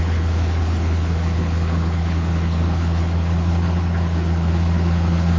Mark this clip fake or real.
fake